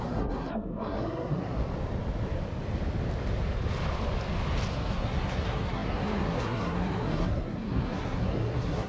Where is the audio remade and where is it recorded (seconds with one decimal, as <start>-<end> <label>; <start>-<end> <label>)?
0.0-1.6 remade; 1.6-4.7 recorded; 4.7-8.9 remade